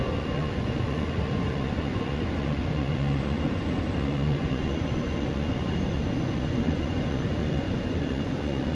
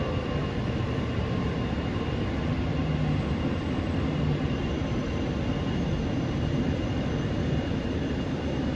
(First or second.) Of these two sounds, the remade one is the first